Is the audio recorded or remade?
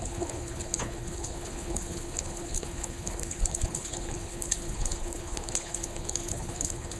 remade